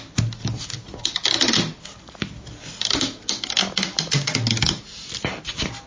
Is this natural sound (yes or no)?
yes